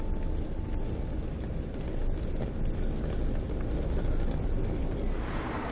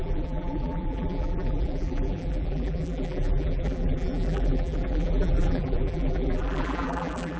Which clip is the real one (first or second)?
first